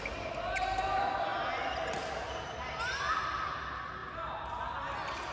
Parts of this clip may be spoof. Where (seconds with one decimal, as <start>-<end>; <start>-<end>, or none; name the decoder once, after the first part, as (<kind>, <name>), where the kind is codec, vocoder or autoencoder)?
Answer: none